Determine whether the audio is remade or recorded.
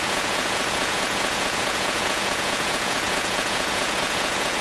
remade